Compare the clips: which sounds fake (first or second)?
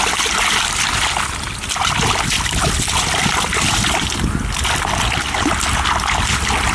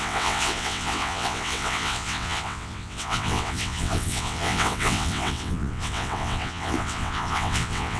second